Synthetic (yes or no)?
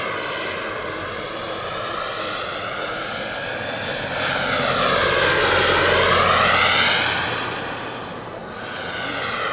no